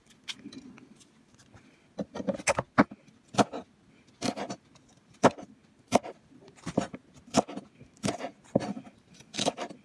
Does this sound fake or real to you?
real